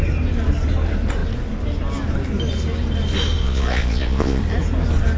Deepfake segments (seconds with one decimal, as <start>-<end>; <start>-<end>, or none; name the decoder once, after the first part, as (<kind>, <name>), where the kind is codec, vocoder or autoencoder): 3.4-4.4 (vocoder, Vocos)